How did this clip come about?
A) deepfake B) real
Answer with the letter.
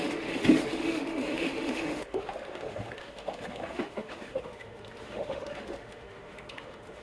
A